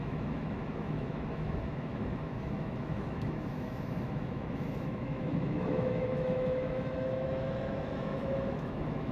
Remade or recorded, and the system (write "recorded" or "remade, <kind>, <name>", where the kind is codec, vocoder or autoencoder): remade, autoencoder, DAC-VAE